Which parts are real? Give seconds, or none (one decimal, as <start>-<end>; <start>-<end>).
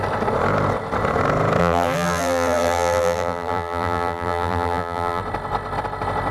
0.0-1.6; 5.2-6.3